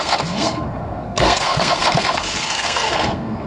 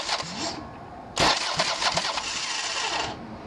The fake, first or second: first